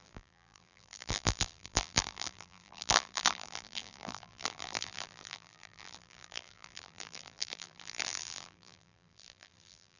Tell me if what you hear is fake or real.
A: fake